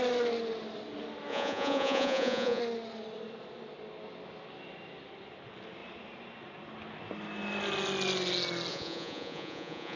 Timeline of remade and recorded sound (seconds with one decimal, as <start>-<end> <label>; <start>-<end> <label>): 0.0-1.3 recorded; 1.3-2.6 remade; 2.6-8.7 recorded; 8.7-10.0 remade